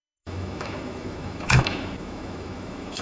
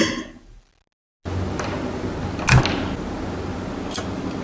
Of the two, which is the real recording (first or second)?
second